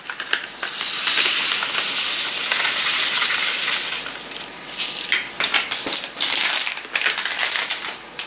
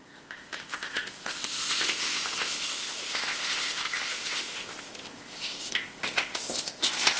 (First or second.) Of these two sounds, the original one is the first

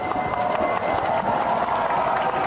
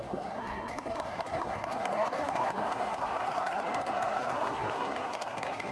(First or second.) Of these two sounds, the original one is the first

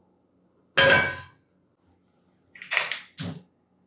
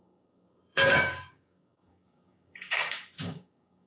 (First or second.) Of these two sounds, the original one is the first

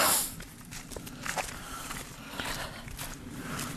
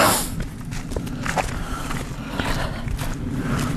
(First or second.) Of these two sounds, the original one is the second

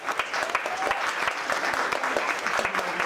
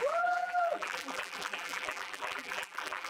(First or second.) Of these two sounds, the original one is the first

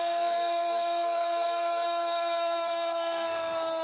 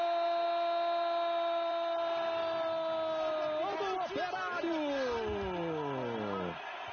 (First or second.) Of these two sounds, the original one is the second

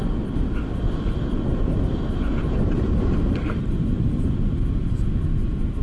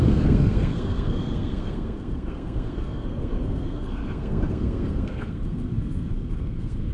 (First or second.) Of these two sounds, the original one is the first